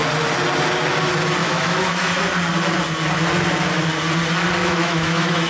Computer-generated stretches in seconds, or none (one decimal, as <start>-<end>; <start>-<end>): 1.4-2.2; 4.6-5.5